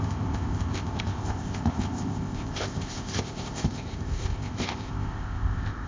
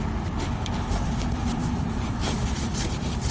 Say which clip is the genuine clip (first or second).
second